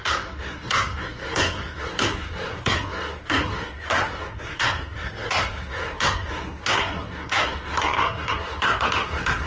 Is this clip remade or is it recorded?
remade